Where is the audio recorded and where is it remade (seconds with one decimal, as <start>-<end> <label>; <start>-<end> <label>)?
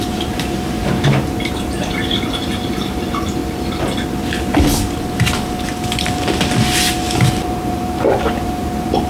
0.0-3.4 remade; 3.4-7.3 recorded; 7.3-9.1 remade